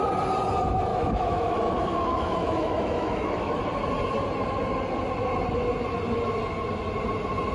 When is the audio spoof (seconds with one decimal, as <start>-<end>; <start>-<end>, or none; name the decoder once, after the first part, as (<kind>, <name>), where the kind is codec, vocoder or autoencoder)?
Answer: 0.9-3.6 (autoencoder, DAC-VAE)

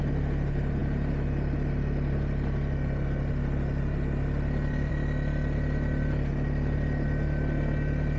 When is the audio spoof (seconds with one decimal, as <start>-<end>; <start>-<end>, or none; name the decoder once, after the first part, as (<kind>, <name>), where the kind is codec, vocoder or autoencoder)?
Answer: none

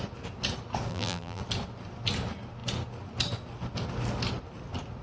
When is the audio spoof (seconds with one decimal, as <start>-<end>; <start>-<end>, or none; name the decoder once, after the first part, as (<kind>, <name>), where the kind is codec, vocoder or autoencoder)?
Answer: 0.9-1.4 (vocoder, BigVGAN v2)

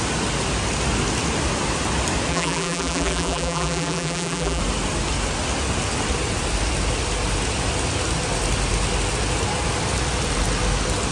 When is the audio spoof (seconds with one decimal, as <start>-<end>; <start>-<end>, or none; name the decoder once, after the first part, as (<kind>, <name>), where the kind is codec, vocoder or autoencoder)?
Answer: 2.3-4.6 (vocoder, BigVGAN v2)

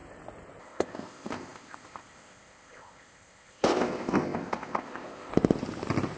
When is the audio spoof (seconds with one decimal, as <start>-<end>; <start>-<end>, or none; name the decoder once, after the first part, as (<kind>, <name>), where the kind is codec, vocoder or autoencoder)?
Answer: 0.6-5.3 (codec, ZipCodec)

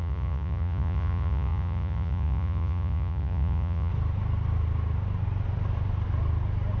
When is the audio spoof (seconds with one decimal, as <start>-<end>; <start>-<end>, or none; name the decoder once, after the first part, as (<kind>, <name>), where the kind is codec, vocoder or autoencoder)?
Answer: 0.0-3.9 (vocoder, Vocos)

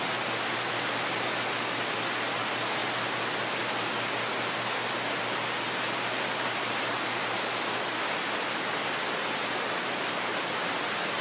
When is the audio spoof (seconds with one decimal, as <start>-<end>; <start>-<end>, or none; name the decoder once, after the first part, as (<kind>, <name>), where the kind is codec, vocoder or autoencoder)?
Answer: none

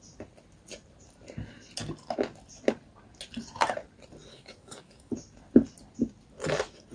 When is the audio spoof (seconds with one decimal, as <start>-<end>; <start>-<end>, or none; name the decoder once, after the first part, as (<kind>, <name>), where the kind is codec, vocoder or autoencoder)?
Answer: 4.3-5.1 (codec, DAC)